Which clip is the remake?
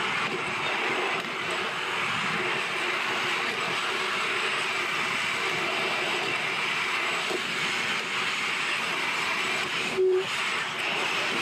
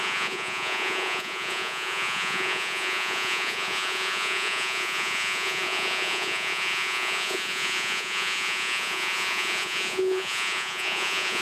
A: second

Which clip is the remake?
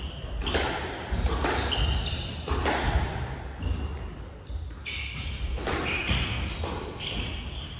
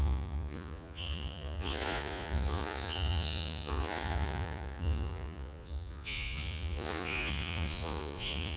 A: second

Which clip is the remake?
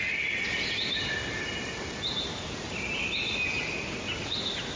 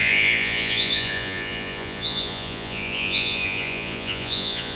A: second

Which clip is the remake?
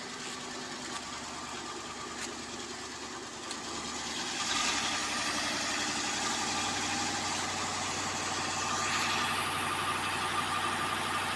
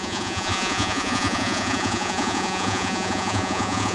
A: second